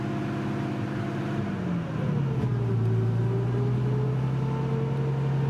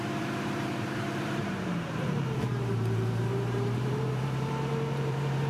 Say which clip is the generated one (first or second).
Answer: second